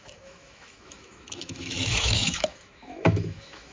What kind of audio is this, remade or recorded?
remade